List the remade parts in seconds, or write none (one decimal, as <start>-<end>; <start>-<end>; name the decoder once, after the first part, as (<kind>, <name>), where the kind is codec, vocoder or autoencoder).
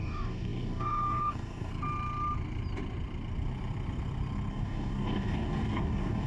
0.0-1.7 (codec, DAC); 4.5-6.3